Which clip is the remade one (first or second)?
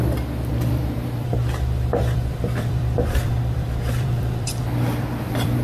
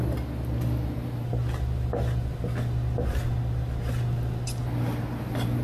first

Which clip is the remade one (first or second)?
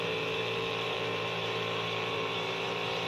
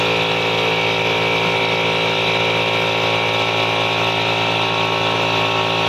first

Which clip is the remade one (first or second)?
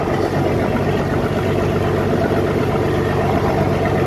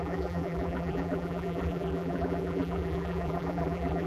second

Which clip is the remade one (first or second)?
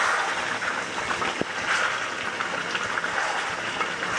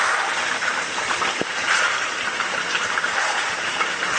second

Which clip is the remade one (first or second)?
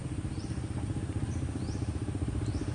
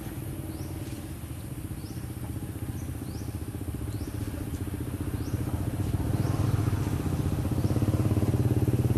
first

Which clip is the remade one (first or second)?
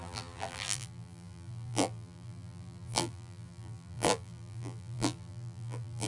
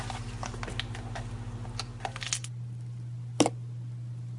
first